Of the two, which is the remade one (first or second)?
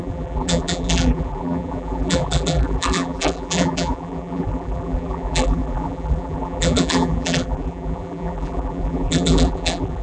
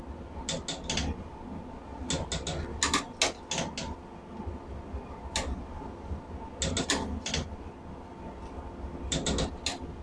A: first